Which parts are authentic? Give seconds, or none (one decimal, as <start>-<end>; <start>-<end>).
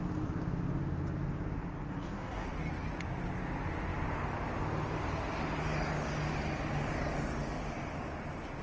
0.0-1.9; 2.5-8.6